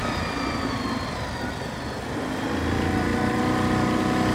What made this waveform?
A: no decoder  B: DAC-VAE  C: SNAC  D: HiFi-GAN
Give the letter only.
A